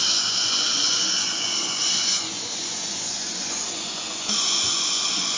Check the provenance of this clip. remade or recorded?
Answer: remade